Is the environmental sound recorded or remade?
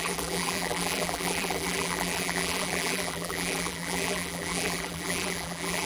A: remade